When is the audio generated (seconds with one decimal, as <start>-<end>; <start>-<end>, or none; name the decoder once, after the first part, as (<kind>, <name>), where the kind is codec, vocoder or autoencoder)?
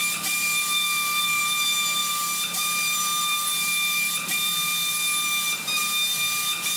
0.0-1.4 (vocoder, BigVGAN v2); 2.0-4.9